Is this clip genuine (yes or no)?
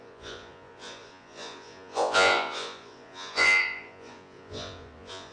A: no